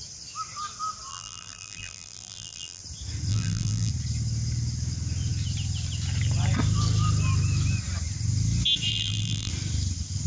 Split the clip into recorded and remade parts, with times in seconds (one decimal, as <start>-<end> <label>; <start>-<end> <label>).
0.0-1.1 recorded; 1.1-2.8 remade; 2.8-3.3 recorded; 3.3-3.9 remade; 3.9-8.9 recorded; 8.9-9.5 remade; 9.5-10.3 recorded